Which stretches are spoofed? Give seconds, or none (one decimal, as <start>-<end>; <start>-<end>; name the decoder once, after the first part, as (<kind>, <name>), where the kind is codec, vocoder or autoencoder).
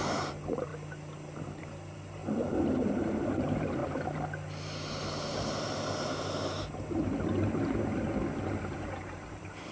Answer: 0.0-0.7 (vocoder, BigVGAN v2); 1.4-2.2; 2.9-3.8; 8.6-9.7